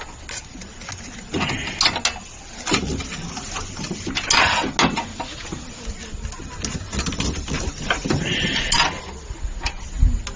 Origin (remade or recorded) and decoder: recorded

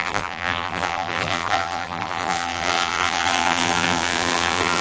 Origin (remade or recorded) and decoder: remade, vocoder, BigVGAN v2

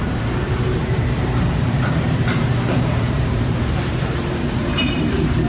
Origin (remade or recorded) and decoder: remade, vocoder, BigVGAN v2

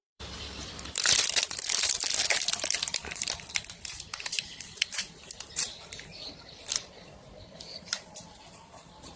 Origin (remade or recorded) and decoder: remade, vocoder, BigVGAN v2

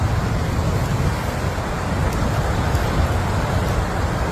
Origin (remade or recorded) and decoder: recorded